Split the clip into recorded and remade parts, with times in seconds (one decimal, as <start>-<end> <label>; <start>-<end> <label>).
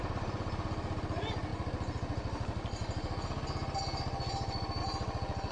0.0-5.5 recorded